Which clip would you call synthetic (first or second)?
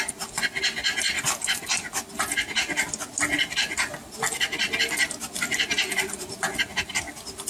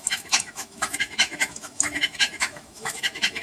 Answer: second